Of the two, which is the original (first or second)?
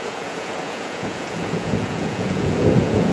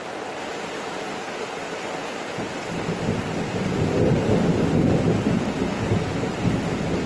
second